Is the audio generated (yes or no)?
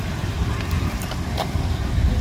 no